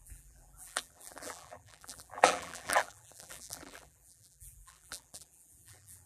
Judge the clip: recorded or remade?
remade